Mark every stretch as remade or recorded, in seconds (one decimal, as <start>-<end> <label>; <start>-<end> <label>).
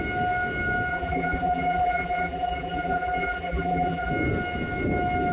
0.0-0.9 recorded; 0.9-4.1 remade; 4.1-5.3 recorded